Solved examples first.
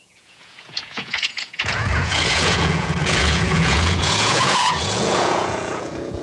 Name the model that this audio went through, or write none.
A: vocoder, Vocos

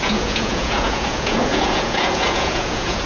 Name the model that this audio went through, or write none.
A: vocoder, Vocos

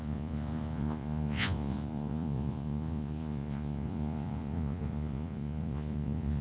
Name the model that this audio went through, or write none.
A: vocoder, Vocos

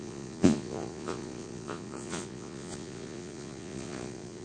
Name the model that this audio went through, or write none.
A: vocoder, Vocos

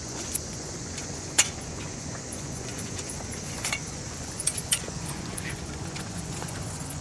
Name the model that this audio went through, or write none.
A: vocoder, Vocos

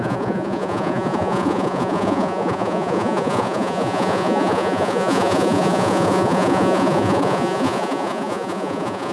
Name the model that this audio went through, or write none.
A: vocoder, Vocos